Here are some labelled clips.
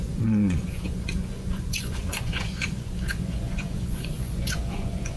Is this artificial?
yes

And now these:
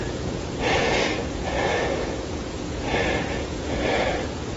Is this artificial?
yes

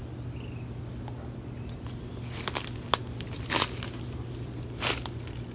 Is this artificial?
no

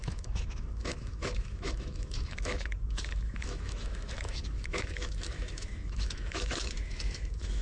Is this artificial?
yes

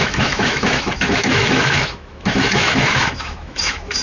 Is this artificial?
yes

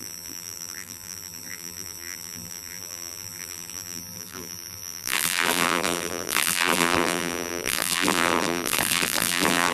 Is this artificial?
yes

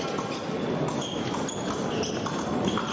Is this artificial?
no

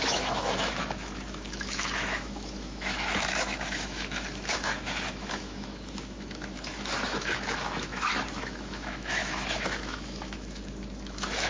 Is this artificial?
yes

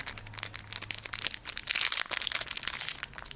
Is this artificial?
no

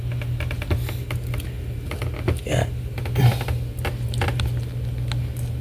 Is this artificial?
no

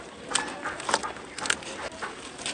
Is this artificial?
no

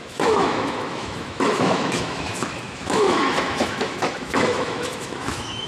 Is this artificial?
yes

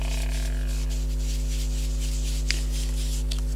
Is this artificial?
no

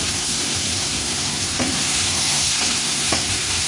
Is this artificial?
yes